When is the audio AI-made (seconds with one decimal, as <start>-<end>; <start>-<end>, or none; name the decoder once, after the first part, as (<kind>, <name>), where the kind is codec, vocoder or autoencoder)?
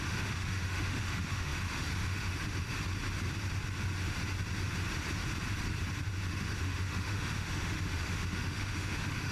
0.0-2.9 (autoencoder, DAC-VAE); 6.3-9.3